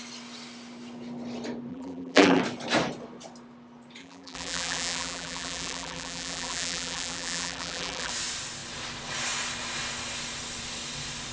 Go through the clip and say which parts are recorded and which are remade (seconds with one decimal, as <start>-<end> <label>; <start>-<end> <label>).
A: 0.0-1.7 recorded; 1.7-2.4 remade; 2.4-4.0 recorded; 4.0-8.1 remade; 8.1-11.3 recorded